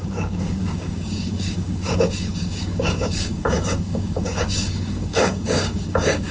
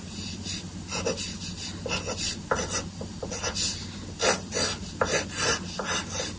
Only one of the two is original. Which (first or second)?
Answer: second